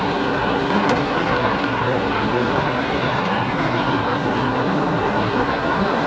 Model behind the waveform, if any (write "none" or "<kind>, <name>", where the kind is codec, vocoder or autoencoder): codec, SNAC